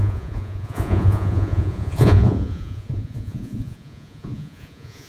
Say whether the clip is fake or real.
fake